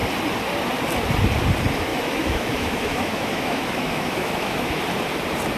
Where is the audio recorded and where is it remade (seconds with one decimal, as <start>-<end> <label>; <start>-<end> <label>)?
0.0-1.9 recorded; 1.9-4.8 remade; 4.8-5.6 recorded